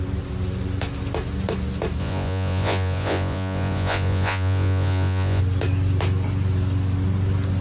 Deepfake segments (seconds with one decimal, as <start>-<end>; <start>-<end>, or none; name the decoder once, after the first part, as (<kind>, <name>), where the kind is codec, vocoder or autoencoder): 2.0-5.4 (vocoder, Vocos)